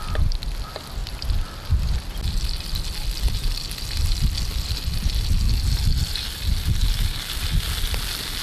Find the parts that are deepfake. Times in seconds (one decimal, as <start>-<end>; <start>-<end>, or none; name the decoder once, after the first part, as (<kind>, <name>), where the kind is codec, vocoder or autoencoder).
none